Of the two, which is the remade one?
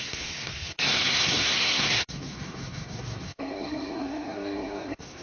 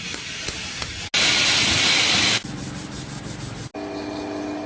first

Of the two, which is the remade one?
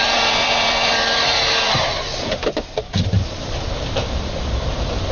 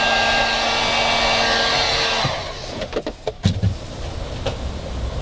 first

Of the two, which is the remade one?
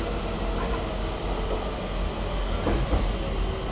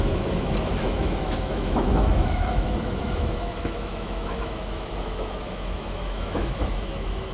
second